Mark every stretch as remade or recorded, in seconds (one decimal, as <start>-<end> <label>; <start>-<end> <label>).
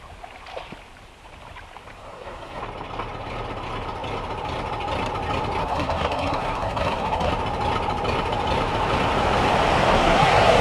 0.0-2.0 recorded; 2.0-2.6 remade; 2.6-5.6 recorded; 5.6-7.3 remade; 7.3-10.0 recorded; 10.0-10.6 remade